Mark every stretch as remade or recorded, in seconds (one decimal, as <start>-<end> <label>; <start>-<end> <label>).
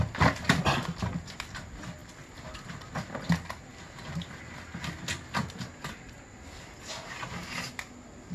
0.0-8.3 recorded